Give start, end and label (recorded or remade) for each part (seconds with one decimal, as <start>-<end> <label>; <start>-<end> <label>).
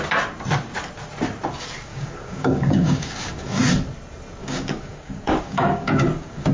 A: 0.0-1.9 recorded; 1.9-3.6 remade; 3.6-4.4 recorded; 4.4-6.5 remade